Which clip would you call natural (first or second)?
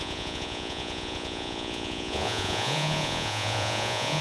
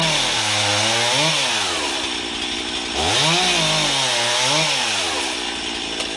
second